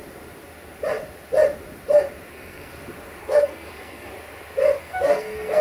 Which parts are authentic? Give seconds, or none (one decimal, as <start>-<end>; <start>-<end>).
0.0-2.3; 2.7-3.2; 4.1-4.8